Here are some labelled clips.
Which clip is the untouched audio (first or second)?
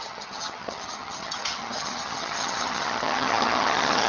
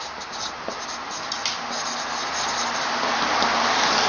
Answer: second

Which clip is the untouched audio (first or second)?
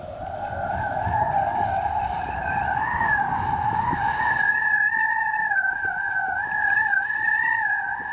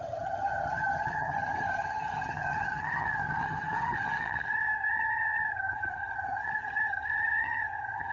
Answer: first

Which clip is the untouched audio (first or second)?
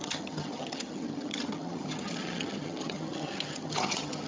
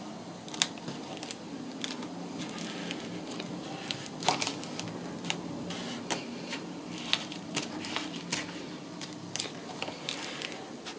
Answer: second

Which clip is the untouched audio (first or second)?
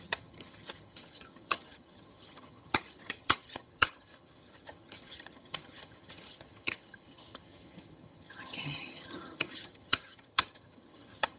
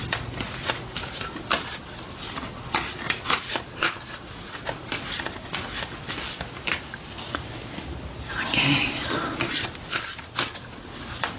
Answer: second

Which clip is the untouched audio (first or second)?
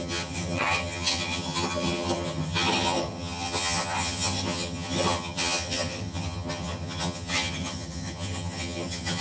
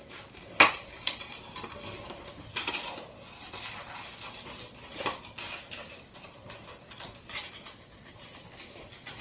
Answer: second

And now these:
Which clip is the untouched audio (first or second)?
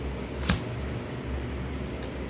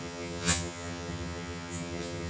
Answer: first